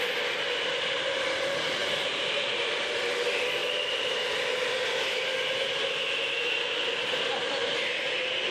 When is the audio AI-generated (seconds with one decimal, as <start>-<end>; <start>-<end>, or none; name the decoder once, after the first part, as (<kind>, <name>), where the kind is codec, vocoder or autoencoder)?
none